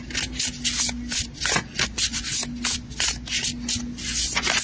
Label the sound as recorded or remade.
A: recorded